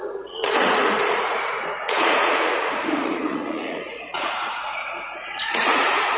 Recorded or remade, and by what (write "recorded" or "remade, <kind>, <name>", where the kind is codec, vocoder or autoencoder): remade, vocoder, Vocos